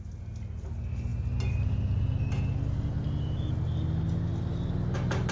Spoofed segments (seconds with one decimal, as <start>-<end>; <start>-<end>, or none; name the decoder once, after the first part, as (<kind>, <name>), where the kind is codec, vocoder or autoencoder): none

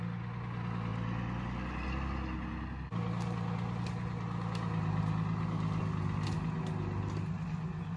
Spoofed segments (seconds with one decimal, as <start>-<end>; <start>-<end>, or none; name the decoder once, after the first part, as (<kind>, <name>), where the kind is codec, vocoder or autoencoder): none

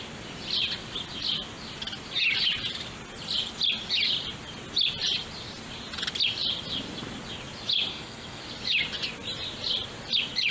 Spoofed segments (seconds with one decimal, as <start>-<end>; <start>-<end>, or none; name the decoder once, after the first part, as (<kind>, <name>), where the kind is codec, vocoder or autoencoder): 7.9-8.4 (codec, SNAC)

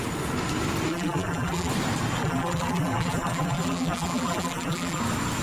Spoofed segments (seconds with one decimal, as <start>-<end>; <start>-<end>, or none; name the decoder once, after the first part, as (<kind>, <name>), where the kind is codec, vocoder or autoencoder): 0.9-1.7 (vocoder, BigVGAN v2); 2.2-5.0

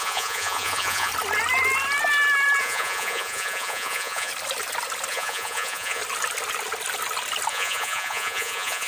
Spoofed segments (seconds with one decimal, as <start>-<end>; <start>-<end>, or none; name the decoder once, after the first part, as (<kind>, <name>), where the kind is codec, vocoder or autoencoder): 0.0-1.1 (vocoder, Vocos); 2.6-4.3; 5.1-6.0; 7.5-8.9

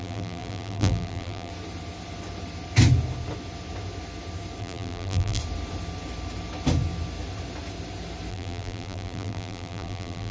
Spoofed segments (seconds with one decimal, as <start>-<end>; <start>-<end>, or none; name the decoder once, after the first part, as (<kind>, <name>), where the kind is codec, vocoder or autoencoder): 0.0-1.5 (vocoder, BigVGAN v2); 4.6-5.4; 8.3-10.3